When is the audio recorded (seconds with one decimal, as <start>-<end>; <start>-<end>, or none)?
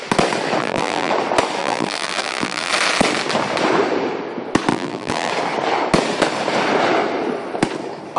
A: 0.0-0.6; 1.1-1.6; 2.7-4.7; 5.3-8.2